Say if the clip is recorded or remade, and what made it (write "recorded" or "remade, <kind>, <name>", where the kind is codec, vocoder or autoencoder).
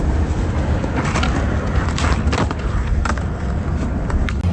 recorded